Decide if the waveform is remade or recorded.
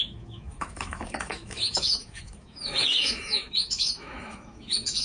remade